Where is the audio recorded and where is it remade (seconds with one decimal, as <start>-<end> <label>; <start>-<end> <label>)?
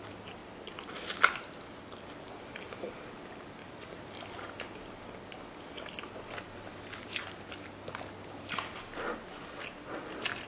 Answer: 0.0-10.5 recorded